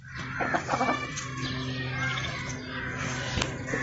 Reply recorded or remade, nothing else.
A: recorded